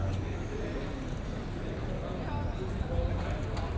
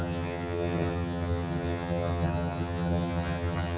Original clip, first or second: first